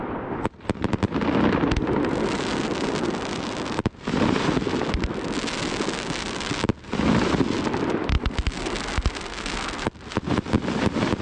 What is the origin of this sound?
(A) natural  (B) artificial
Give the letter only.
A